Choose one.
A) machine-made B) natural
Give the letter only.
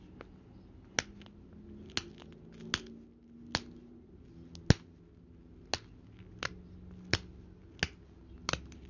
B